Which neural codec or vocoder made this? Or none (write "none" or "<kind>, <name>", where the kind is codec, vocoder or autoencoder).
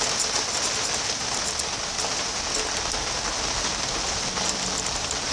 none